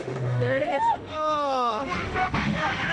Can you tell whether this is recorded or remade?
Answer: remade